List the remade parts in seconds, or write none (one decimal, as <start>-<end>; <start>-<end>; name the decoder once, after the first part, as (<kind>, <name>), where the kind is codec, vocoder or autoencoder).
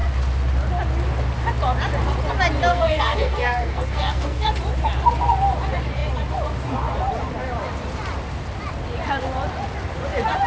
2.7-4.5 (codec, SNAC)